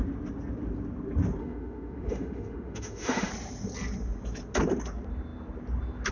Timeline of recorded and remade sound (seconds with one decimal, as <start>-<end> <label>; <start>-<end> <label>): 0.0-1.4 recorded; 1.4-3.3 remade; 3.3-6.1 recorded